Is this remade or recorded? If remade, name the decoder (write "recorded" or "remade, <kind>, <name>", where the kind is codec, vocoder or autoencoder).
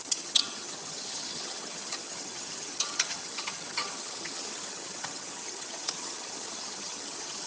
remade, vocoder, HiFi-GAN